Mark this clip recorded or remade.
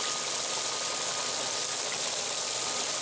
recorded